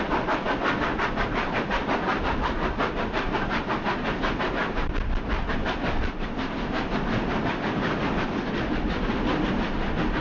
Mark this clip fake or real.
real